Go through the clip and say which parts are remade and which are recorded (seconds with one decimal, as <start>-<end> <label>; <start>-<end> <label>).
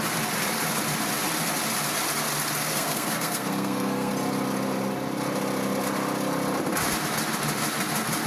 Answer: 0.0-2.7 recorded; 2.7-4.1 remade; 4.1-8.3 recorded